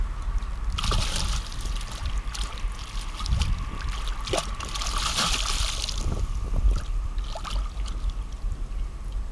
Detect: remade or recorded recorded